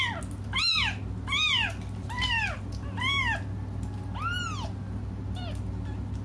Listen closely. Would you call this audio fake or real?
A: real